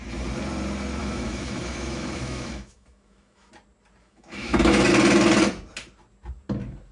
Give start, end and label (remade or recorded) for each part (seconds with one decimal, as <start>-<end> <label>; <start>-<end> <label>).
0.0-1.0 recorded; 1.0-3.5 remade; 3.5-4.0 recorded; 4.0-4.9 remade; 4.9-6.9 recorded